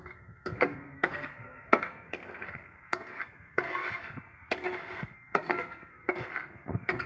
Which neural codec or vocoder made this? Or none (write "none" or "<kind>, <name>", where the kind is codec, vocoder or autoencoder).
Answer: codec, SNAC